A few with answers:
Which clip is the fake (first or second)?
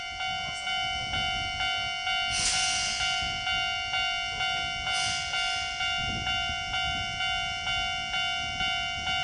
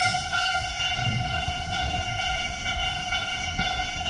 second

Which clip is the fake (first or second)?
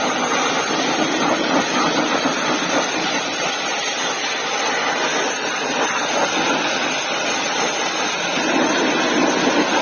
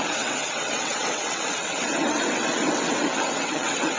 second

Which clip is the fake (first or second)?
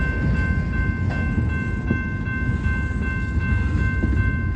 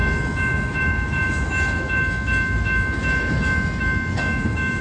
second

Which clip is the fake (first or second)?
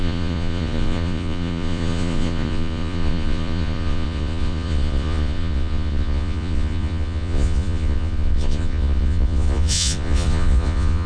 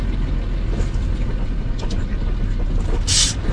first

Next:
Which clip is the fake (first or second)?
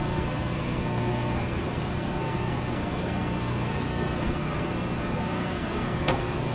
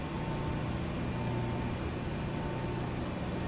first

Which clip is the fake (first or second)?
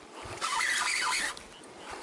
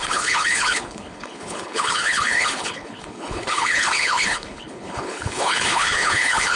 second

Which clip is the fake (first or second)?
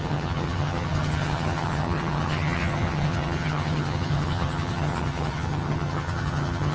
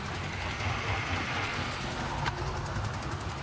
first